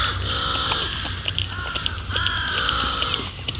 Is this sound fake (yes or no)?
no